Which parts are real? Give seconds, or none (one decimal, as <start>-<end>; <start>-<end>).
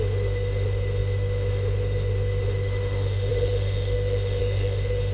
none